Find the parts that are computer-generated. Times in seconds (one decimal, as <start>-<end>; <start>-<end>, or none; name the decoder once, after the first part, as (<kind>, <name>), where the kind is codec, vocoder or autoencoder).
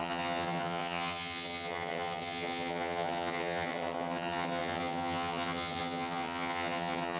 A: 0.0-7.2 (vocoder, HiFi-GAN)